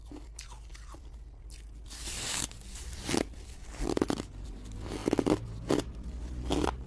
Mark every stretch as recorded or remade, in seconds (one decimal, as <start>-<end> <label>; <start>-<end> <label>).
0.0-0.7 recorded; 0.7-3.6 remade; 3.6-6.9 recorded